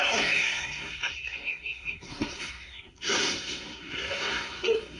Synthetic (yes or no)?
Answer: yes